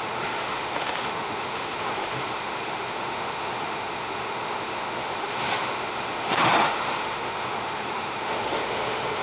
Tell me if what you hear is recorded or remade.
remade